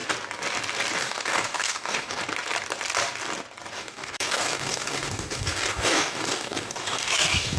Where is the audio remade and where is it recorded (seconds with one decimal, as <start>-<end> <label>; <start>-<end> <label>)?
0.0-1.0 recorded; 1.0-2.2 remade; 2.2-3.7 recorded; 3.7-7.6 remade